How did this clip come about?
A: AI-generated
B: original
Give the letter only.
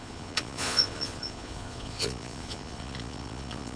A